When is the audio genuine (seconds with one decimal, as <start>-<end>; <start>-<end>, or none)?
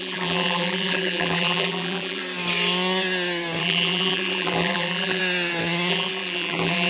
2.2-3.6; 5.2-5.9